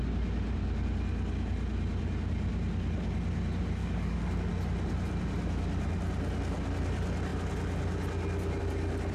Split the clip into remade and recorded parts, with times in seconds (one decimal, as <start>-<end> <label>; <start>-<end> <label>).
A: 0.0-3.8 recorded; 3.8-4.5 remade; 4.5-9.1 recorded